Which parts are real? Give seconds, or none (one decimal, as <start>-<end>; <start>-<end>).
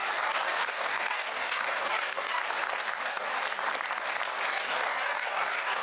2.4-3.0; 3.4-4.5